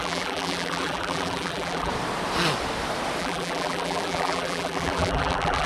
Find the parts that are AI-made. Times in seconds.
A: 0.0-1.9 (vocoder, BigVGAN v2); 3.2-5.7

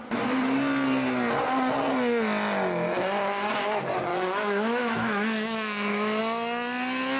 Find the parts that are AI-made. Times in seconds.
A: 4.1-6.2 (autoencoder, DAC-VAE)

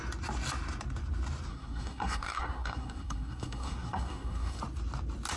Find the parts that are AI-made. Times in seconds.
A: 1.5-4.6 (codec, SNAC)

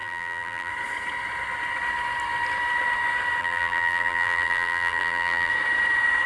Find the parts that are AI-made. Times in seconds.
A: 0.0-0.7 (vocoder, BigVGAN v2); 3.4-5.5

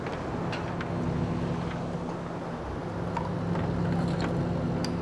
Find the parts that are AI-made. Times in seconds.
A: none

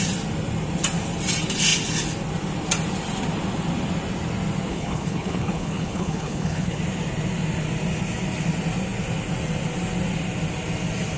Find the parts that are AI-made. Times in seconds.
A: 4.7-6.8 (codec, HILCodec)